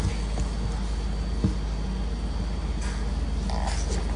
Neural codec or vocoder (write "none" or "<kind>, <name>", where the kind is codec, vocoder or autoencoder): none